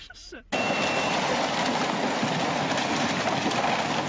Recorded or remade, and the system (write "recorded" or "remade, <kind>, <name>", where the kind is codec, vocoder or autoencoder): recorded